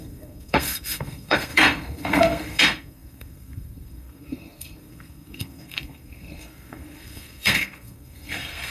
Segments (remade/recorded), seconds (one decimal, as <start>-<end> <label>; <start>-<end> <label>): 0.0-8.7 remade